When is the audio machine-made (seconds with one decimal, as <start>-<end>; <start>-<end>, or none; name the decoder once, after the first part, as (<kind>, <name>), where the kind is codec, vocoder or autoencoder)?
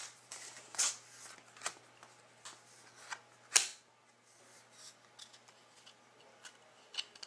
0.0-0.9 (vocoder, BigVGAN v2)